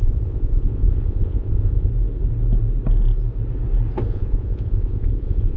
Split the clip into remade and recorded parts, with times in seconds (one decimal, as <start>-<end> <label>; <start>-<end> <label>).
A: 0.0-1.9 remade; 1.9-4.1 recorded; 4.1-5.6 remade